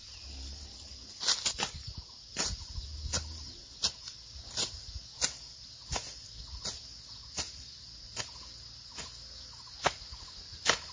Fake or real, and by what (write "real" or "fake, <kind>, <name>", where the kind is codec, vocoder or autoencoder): real